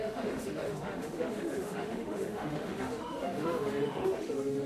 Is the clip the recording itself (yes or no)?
no